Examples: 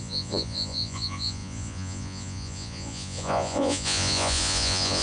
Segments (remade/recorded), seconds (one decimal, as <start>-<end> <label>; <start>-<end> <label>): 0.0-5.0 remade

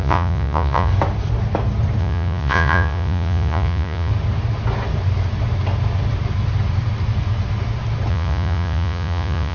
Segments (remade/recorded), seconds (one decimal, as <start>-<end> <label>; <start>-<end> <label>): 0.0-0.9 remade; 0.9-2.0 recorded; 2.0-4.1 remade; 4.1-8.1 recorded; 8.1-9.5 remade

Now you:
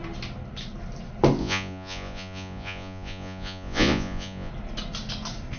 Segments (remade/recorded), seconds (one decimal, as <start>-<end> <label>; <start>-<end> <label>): 0.0-1.4 recorded; 1.4-4.5 remade; 4.5-5.6 recorded